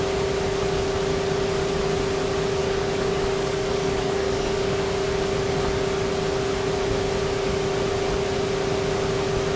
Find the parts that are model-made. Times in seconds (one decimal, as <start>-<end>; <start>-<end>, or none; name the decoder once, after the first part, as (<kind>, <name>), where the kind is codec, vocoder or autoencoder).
2.6-4.8 (codec, DAC)